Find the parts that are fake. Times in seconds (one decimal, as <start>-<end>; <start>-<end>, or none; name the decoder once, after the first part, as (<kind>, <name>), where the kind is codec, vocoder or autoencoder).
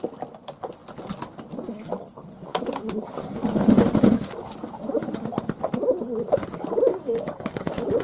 6.9-8.0 (codec, DAC)